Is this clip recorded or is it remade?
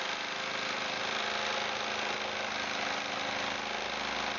recorded